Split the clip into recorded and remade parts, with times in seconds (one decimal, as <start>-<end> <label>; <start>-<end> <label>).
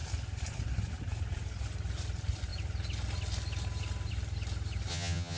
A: 0.0-4.9 recorded; 4.9-5.4 remade